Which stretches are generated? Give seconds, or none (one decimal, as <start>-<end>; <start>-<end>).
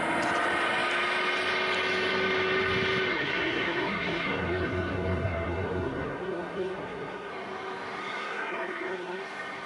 3.1-7.3; 8.0-9.2